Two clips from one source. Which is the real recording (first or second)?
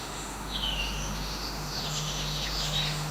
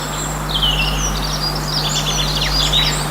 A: second